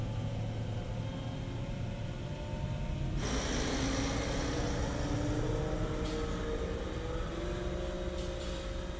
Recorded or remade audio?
recorded